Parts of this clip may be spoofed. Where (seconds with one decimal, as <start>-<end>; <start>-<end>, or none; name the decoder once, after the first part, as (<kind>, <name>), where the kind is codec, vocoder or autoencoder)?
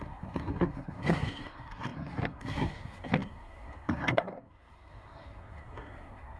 0.0-6.4 (codec, SNAC)